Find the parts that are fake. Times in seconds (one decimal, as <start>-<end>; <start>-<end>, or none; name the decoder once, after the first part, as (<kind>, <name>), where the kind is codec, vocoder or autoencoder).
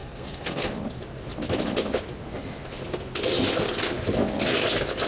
0.0-0.7 (codec, SNAC)